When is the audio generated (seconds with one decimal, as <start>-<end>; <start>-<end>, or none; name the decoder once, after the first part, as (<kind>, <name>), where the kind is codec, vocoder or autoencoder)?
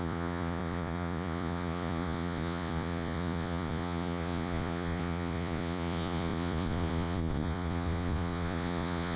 0.0-9.2 (vocoder, Vocos)